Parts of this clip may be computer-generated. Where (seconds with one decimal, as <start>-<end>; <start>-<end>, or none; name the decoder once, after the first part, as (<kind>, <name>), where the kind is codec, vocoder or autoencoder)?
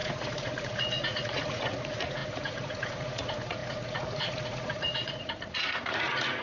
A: 0.0-6.4 (vocoder, Vocos)